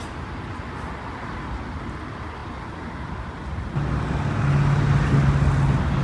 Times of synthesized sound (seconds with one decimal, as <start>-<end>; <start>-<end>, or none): none